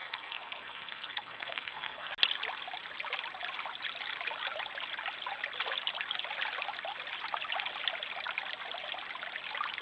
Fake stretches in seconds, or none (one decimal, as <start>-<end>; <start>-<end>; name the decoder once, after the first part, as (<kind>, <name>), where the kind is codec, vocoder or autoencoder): 0.0-2.1 (codec, SNAC)